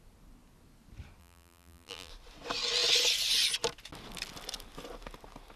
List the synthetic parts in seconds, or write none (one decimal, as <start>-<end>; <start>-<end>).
1.2-2.1

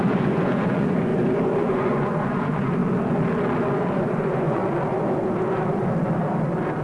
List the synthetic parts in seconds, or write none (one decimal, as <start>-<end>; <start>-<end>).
0.0-1.1; 1.6-2.8; 3.9-4.6

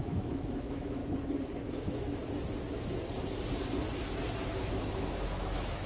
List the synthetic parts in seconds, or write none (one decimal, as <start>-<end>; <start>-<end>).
0.0-1.0; 1.6-2.2; 4.4-5.9

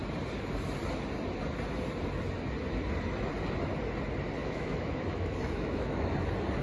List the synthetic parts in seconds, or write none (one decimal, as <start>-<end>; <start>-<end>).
4.4-6.1

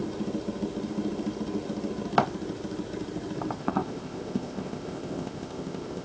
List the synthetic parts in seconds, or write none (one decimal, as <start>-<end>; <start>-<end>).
3.6-6.0

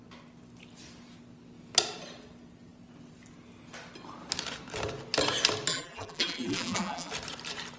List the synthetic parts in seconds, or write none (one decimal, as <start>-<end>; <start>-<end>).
5.7-7.1